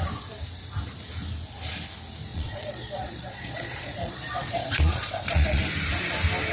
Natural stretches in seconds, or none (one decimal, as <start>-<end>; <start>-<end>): 0.0-2.3; 5.6-6.5